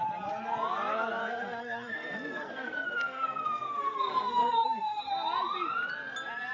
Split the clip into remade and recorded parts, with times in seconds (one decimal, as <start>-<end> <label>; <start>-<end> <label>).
0.0-1.2 recorded; 1.2-5.1 remade; 5.1-6.5 recorded